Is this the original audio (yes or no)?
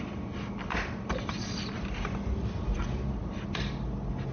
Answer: yes